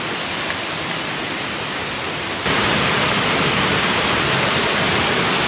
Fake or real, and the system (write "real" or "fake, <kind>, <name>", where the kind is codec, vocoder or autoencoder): real